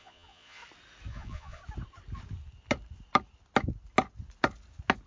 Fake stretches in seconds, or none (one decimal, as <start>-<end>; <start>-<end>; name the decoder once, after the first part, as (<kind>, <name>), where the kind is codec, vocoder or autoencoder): 0.0-0.6 (vocoder, Vocos); 1.1-1.6